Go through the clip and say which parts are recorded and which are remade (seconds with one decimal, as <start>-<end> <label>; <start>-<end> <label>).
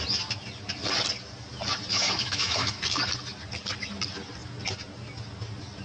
0.0-1.9 recorded; 1.9-2.8 remade; 2.8-5.8 recorded